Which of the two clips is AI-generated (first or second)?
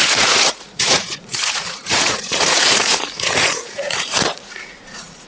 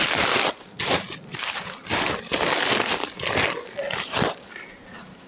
first